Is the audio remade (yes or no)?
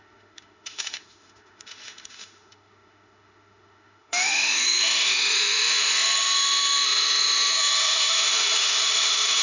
yes